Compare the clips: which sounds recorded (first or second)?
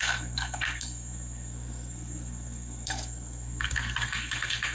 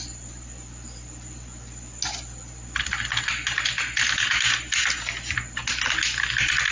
second